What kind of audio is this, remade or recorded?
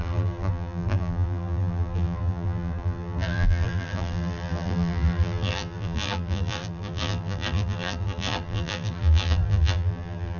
remade